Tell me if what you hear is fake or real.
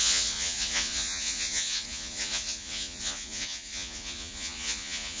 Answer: fake